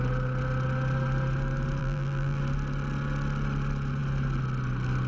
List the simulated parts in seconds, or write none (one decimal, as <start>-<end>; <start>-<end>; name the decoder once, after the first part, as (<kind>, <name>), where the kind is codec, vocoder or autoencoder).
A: 1.8-2.4 (vocoder, BigVGAN v2)

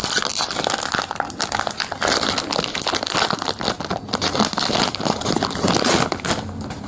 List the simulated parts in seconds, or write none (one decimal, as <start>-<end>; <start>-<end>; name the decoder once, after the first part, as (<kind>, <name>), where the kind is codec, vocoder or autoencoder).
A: none

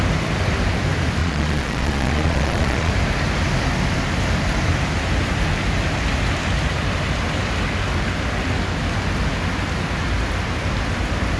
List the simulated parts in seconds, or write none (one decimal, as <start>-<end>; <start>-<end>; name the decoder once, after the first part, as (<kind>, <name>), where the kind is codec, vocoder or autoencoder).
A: 1.2-2.9 (vocoder, Vocos)

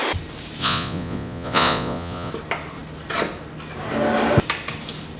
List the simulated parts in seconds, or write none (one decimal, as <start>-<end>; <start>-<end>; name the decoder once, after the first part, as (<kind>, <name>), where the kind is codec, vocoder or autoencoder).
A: 0.6-2.3 (vocoder, Vocos)